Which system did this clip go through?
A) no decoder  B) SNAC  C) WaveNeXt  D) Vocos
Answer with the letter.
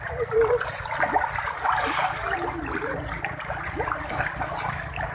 A